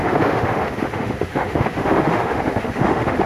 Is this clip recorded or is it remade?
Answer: remade